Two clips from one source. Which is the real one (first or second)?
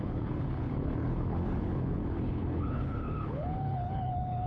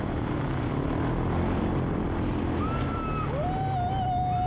second